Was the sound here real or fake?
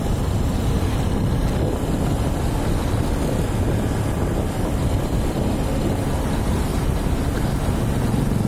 real